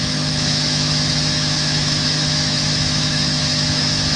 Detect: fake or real fake